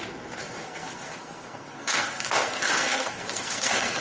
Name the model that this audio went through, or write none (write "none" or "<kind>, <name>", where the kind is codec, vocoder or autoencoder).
codec, SNAC